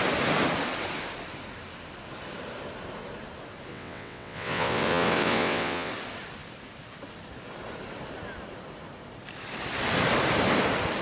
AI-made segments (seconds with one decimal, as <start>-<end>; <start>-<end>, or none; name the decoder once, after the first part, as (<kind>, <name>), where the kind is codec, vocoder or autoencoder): 3.7-5.9 (vocoder, WaveNeXt)

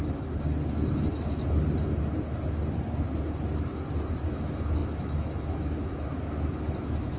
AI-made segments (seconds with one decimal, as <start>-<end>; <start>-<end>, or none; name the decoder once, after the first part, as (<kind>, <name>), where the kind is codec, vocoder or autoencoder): 4.3-7.2 (autoencoder, DAC-VAE)

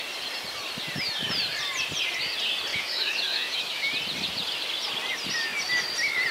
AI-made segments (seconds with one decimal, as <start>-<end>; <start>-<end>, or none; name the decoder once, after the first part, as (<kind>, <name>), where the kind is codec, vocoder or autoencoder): 2.7-3.9 (autoencoder, DAC-VAE)

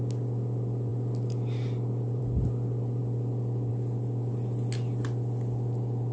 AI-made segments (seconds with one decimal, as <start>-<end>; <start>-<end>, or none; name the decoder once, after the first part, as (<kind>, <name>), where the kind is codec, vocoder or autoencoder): none

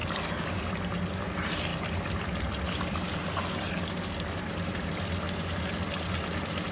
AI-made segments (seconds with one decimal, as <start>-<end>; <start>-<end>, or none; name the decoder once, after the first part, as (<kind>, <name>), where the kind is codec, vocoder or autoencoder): 0.0-0.7 (vocoder, BigVGAN v2); 1.7-5.7

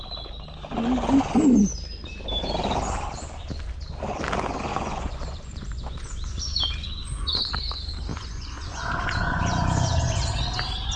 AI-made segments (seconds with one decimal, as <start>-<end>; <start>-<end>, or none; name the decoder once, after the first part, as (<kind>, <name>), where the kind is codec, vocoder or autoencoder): 4.7-7.5 (vocoder, Vocos); 8.1-10.3

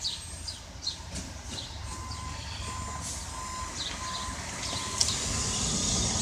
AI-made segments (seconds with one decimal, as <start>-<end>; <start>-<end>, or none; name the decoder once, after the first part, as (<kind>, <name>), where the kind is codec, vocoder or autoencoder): none

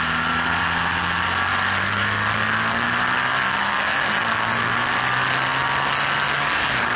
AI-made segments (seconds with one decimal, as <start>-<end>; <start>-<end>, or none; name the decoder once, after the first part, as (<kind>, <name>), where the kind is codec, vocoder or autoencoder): none